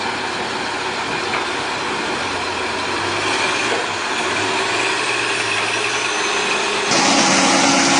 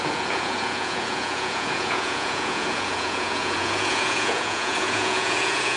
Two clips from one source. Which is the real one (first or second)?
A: first